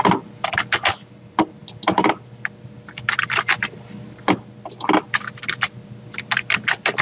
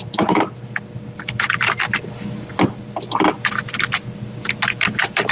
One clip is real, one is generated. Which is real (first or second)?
first